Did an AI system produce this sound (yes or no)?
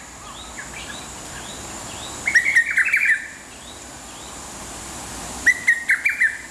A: no